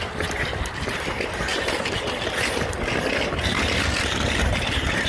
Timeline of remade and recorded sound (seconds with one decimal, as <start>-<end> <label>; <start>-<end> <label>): 0.0-5.1 recorded